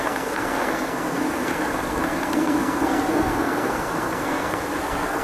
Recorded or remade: remade